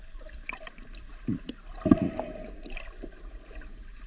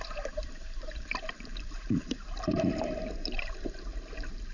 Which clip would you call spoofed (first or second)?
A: second